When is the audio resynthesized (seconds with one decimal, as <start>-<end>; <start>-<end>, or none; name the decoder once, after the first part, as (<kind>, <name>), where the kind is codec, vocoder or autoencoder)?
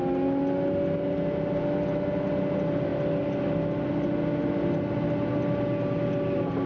none